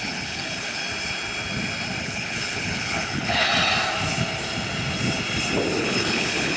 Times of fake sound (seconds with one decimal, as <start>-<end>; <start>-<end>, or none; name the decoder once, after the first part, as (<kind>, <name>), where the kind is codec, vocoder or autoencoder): 0.0-0.8 (codec, HILCodec); 2.0-3.5; 5.8-6.6